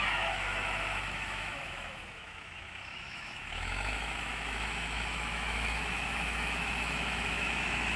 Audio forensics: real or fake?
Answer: fake